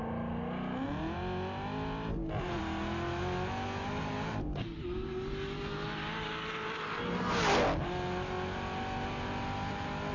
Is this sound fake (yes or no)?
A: no